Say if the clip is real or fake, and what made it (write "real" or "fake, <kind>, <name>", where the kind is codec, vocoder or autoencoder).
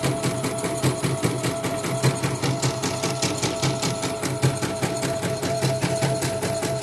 real